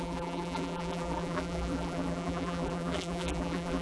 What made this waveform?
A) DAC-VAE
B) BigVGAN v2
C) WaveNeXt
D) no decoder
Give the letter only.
B